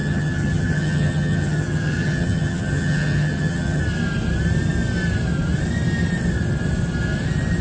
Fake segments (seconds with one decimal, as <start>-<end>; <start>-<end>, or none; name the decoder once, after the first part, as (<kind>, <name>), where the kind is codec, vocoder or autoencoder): 0.0-3.8 (vocoder, HiFi-GAN)